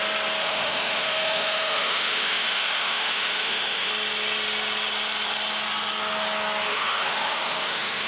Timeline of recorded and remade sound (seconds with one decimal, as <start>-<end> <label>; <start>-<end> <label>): 0.0-0.4 recorded; 0.4-3.9 remade; 3.9-6.7 recorded; 6.7-8.1 remade